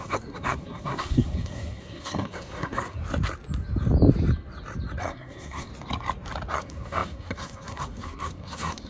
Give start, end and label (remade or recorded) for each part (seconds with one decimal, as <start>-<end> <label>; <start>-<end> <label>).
0.0-3.0 remade; 3.0-5.0 recorded; 5.0-5.7 remade; 5.7-6.5 recorded; 6.5-8.9 remade